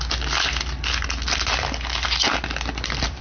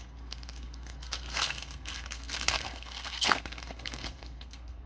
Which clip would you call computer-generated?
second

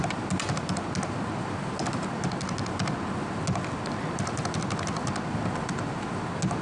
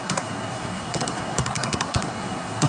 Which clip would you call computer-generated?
second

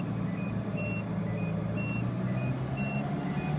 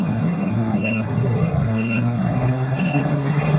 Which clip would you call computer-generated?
second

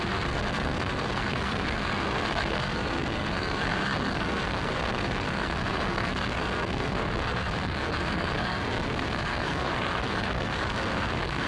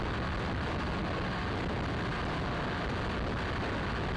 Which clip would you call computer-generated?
first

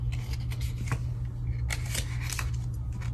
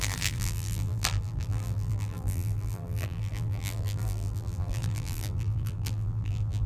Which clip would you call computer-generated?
second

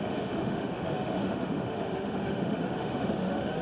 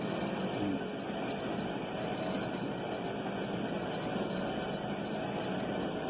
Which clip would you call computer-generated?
first